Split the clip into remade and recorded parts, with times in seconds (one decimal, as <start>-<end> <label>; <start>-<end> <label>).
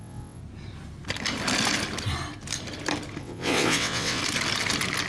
0.0-0.4 remade; 0.4-3.2 recorded; 3.2-4.2 remade; 4.2-5.1 recorded